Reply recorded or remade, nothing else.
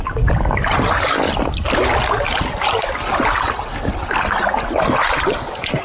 recorded